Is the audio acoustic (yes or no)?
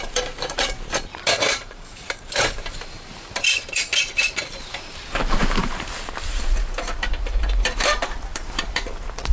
no